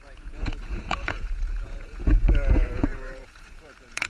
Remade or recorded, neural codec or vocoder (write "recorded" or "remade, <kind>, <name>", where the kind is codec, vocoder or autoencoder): remade, vocoder, Vocos